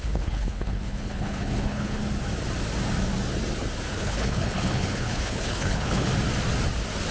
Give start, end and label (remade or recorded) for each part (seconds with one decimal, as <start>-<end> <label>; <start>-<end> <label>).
0.0-2.0 remade; 2.0-3.9 recorded; 3.9-6.1 remade; 6.1-7.1 recorded